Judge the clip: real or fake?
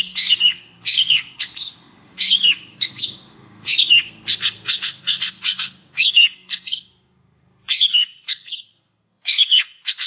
fake